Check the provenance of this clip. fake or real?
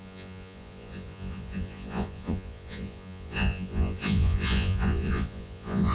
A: fake